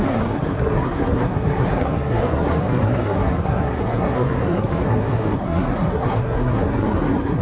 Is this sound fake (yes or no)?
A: yes